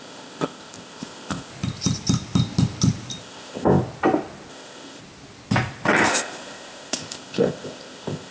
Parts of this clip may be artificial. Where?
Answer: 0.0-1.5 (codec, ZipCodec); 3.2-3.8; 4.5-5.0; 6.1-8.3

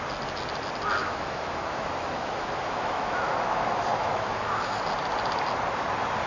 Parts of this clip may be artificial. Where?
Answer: 1.0-4.8 (autoencoder, DAC-VAE)

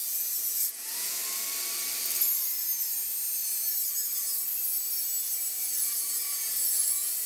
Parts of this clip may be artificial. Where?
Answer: 0.0-1.2 (vocoder, Vocos); 5.6-7.3